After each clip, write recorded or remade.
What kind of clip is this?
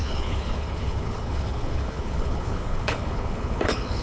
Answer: remade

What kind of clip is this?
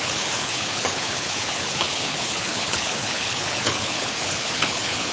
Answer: remade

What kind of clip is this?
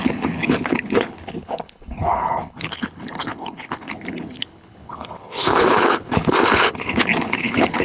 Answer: remade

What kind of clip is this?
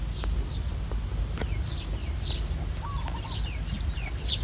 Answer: recorded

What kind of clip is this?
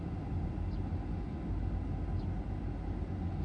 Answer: recorded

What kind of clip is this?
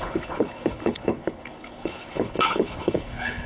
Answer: remade